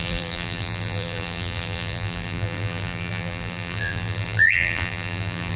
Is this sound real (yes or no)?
no